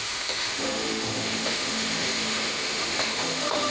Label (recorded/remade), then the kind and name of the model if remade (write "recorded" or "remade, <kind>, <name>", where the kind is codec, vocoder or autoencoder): remade, autoencoder, DAC-VAE